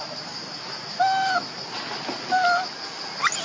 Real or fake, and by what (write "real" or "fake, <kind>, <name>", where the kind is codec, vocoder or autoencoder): real